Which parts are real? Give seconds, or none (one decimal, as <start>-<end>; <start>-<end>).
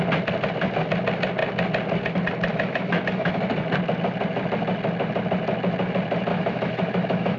0.0-2.5; 3.4-6.3